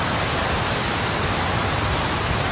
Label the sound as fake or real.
real